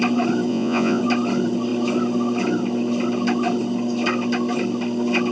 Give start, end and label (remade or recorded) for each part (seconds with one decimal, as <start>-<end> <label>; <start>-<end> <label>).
0.0-0.5 recorded; 0.5-1.0 remade; 1.0-5.3 recorded